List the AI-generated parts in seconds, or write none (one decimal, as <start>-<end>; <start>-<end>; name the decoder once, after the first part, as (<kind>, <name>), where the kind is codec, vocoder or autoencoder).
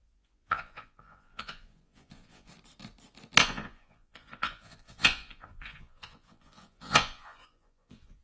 0.0-2.5 (vocoder, Vocos); 3.4-8.2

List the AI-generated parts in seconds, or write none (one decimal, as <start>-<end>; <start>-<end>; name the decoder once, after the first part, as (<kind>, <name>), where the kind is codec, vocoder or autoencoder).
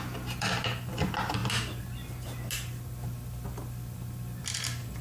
none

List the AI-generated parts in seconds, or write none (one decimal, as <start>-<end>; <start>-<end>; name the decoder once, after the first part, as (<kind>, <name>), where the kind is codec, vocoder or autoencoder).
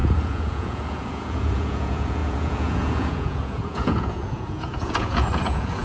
0.0-5.8 (vocoder, Vocos)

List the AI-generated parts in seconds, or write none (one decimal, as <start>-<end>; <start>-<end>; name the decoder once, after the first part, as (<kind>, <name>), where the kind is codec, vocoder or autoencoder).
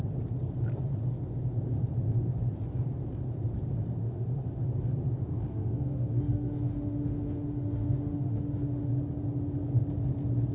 4.0-4.6 (autoencoder, DAC-VAE); 5.5-8.9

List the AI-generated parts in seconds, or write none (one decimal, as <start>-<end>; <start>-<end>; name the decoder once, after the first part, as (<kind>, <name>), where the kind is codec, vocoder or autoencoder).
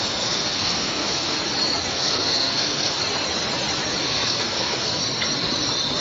0.0-1.4 (codec, SNAC); 1.9-3.0; 4.0-5.0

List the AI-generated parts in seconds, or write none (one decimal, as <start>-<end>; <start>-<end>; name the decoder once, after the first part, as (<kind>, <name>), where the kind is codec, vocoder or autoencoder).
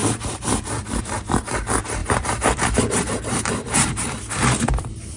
0.0-5.2 (vocoder, BigVGAN v2)